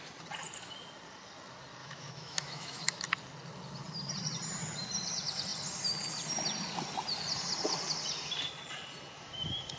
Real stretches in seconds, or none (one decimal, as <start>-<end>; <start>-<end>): 0.0-1.8; 3.0-9.8